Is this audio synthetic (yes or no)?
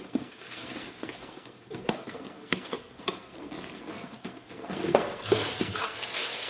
yes